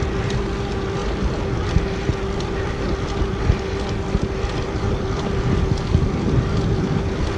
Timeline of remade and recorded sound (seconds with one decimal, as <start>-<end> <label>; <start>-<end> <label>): 0.0-7.4 recorded